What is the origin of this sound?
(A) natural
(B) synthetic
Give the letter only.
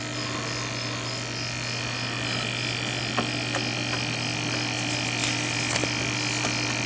A